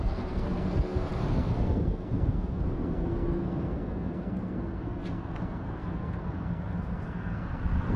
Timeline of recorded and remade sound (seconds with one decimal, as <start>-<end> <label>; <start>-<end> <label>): 0.0-8.0 remade